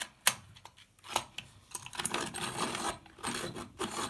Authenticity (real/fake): real